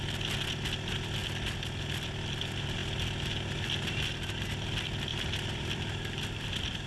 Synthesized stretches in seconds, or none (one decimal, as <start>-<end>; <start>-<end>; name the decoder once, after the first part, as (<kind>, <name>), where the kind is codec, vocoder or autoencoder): 5.1-5.8 (vocoder, BigVGAN v2)